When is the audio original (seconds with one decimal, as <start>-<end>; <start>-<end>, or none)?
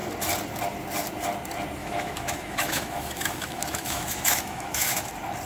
0.0-1.8; 5.1-5.5